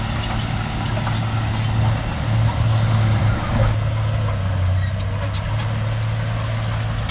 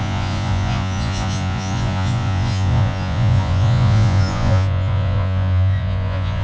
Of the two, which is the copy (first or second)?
second